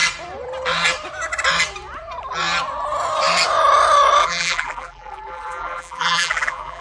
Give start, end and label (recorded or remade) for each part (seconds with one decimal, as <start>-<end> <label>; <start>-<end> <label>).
0.0-4.2 recorded; 4.2-6.8 remade